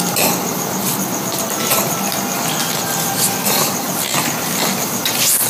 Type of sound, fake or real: real